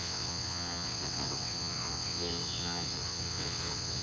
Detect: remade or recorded remade